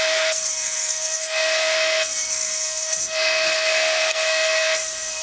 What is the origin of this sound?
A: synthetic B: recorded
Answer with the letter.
A